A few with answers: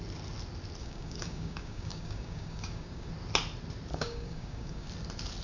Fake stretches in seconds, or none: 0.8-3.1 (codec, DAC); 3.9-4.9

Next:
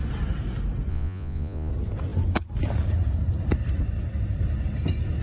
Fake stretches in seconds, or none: 0.9-1.7 (vocoder, Vocos)

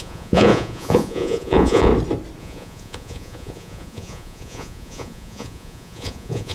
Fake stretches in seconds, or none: 0.0-1.9 (vocoder, Vocos); 2.4-6.5

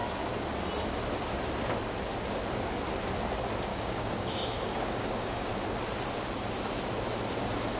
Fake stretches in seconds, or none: 3.7-5.5 (codec, DAC)